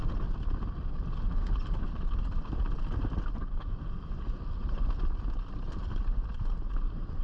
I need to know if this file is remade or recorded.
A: recorded